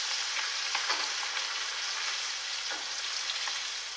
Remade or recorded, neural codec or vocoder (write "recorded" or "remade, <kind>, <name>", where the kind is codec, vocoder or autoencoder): recorded